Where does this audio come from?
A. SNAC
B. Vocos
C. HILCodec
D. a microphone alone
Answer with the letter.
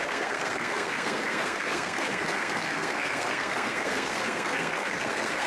A